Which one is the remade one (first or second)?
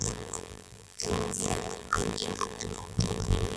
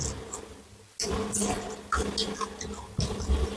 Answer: first